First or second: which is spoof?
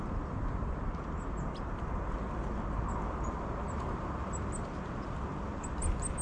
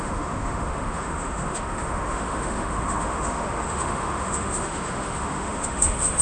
second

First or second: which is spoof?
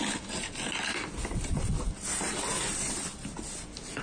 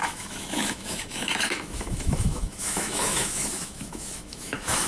second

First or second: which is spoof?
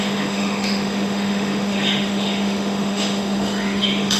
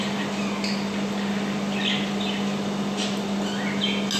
first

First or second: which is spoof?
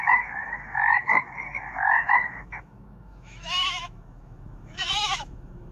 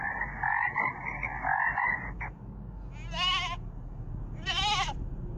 first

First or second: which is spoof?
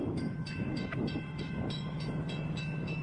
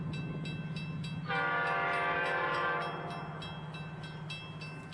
first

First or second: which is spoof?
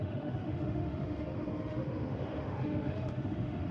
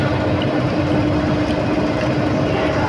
first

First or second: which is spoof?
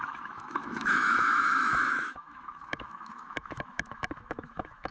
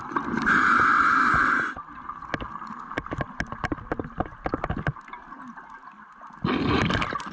first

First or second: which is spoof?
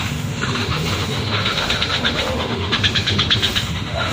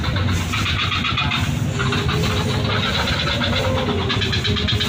first